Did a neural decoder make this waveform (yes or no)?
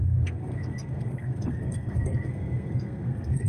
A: yes